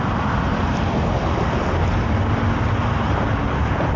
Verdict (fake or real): real